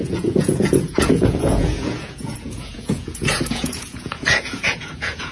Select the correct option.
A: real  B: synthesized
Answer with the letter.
B